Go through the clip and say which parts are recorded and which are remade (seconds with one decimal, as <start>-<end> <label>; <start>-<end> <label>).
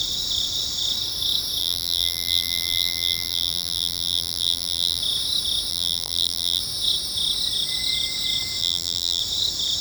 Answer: 0.0-1.6 recorded; 1.6-5.0 remade; 5.0-5.7 recorded; 5.7-6.6 remade; 6.6-8.6 recorded; 8.6-9.2 remade; 9.2-9.8 recorded